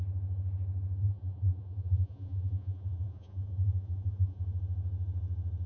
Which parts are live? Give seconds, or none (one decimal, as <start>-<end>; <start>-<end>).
0.0-1.0; 4.4-5.7